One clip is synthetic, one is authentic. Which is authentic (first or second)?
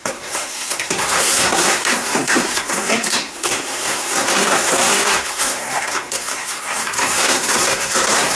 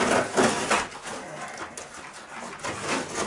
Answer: second